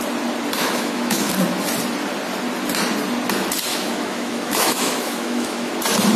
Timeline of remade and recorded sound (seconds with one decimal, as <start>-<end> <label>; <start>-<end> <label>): 0.0-0.6 recorded; 0.6-1.3 remade; 1.3-3.7 recorded; 3.7-5.7 remade; 5.7-6.2 recorded